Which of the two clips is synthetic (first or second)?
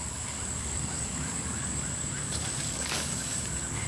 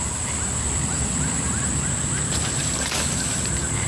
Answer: first